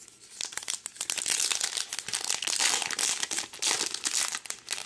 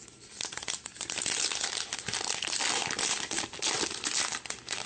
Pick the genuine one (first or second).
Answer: first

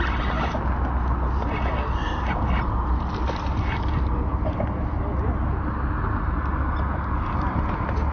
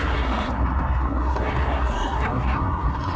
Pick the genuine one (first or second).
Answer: first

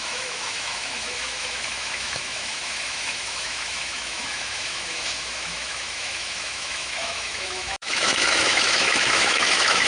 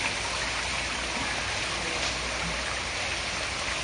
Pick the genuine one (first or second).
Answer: second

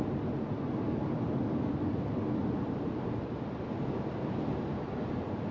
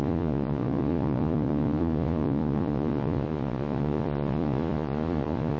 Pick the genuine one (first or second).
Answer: first